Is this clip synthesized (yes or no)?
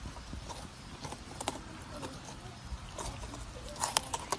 no